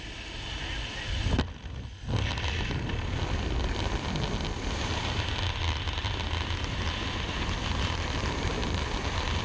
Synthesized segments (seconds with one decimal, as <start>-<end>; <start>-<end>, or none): none